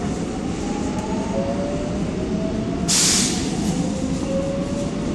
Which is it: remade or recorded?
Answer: recorded